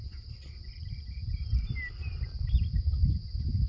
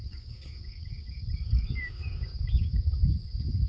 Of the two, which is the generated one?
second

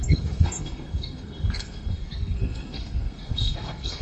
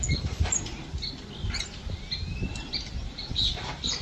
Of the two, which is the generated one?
first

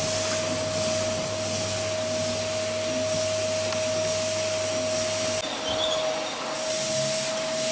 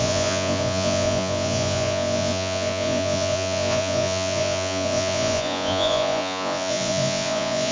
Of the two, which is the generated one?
second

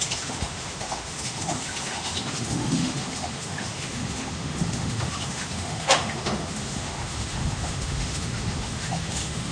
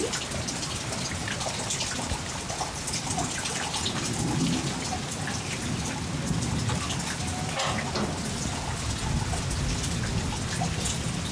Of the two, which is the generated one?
first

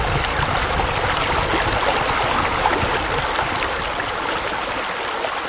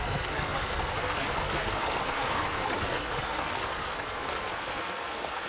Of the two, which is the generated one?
second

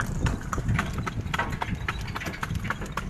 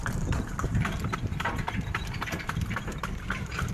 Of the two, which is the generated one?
second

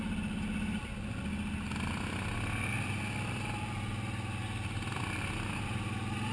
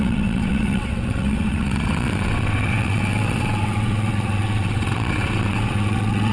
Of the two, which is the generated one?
second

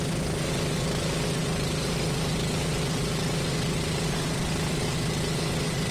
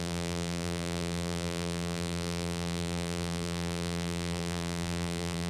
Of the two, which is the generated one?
second